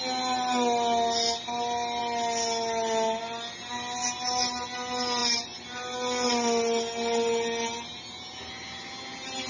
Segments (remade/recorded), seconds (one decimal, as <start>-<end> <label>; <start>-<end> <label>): 0.0-9.5 recorded